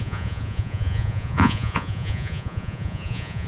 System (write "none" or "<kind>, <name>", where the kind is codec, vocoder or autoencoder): vocoder, Vocos